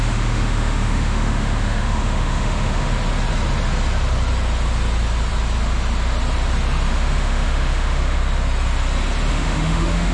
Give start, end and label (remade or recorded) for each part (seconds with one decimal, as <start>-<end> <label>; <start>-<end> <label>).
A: 0.0-2.9 remade; 2.9-6.9 recorded; 6.9-8.2 remade; 8.2-9.3 recorded; 9.3-10.1 remade